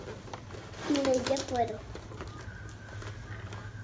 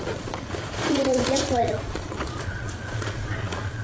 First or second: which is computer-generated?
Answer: second